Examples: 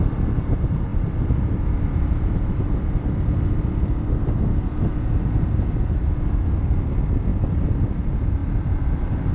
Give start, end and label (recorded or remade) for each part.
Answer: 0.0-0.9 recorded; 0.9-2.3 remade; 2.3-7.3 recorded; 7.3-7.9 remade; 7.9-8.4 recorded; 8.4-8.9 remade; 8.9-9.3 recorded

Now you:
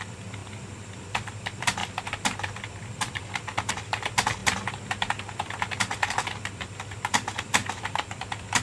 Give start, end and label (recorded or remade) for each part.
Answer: 0.0-4.4 remade; 4.4-5.8 recorded; 5.8-8.6 remade

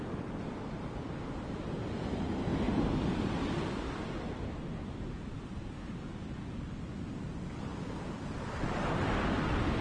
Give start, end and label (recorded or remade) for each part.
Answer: 0.0-9.8 recorded

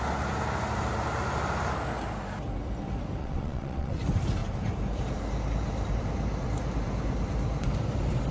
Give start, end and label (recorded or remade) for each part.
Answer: 0.0-3.2 recorded; 3.2-4.0 remade; 4.0-8.3 recorded

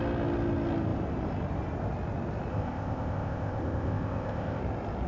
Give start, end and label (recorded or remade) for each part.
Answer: 0.0-2.5 recorded; 2.5-4.6 remade; 4.6-5.1 recorded

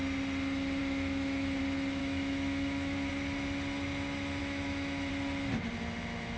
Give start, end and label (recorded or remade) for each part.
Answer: 0.0-0.8 recorded; 0.8-1.6 remade; 1.6-2.0 recorded; 2.0-3.1 remade; 3.1-4.4 recorded; 4.4-5.1 remade; 5.1-6.4 recorded

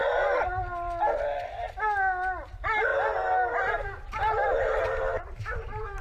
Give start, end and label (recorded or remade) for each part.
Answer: 0.0-2.5 recorded; 2.5-2.9 remade; 2.9-3.6 recorded; 3.6-6.0 remade

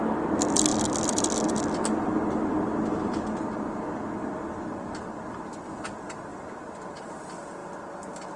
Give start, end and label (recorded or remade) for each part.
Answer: 0.0-6.3 recorded; 6.3-7.0 remade; 7.0-8.4 recorded